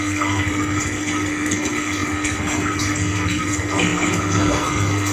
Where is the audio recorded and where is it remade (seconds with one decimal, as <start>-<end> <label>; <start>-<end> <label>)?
0.0-5.1 remade